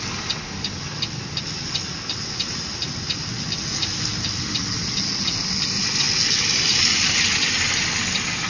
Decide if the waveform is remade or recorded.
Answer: recorded